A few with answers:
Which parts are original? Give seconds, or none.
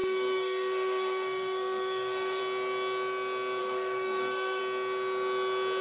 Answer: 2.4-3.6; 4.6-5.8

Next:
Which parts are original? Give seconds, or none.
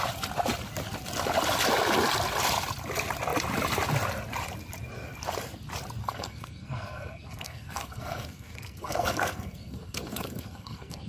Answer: 0.0-6.0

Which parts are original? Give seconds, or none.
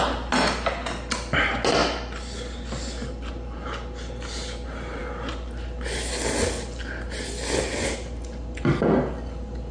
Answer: 0.0-9.7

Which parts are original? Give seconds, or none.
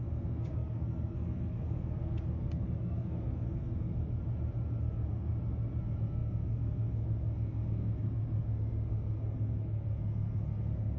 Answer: 4.2-4.8; 5.3-5.8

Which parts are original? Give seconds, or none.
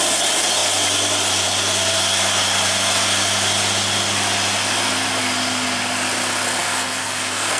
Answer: 0.0-6.6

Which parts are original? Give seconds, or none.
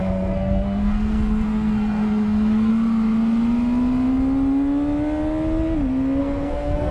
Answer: 2.7-6.2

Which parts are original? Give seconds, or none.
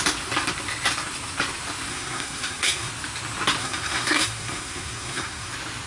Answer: 0.0-1.9; 2.9-3.6; 5.5-5.9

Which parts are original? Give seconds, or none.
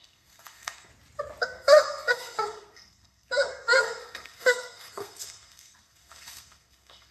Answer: 0.9-1.4